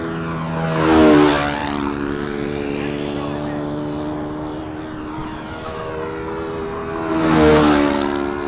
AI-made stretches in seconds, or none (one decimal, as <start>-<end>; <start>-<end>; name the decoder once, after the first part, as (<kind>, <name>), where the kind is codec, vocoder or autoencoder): 5.2-5.9 (autoencoder, DAC-VAE)